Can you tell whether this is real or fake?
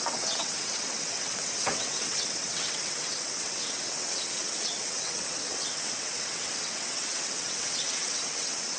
fake